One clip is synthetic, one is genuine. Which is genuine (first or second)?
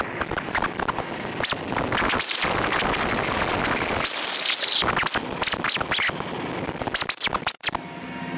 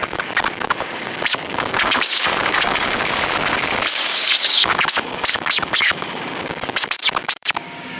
first